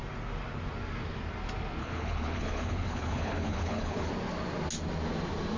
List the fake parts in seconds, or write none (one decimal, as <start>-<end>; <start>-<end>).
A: 1.8-4.1